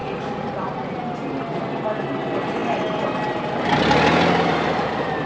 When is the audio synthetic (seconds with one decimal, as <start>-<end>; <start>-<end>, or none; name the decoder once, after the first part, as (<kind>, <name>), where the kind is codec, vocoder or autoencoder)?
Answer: 0.0-1.0 (vocoder, Vocos)